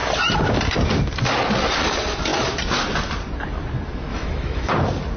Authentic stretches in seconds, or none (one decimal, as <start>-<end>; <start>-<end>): 0.0-4.1; 4.7-5.2